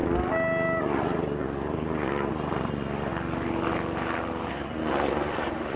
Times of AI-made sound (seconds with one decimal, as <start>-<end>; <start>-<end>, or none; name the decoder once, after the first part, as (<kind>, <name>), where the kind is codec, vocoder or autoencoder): 0.8-3.1 (vocoder, Vocos); 4.5-5.8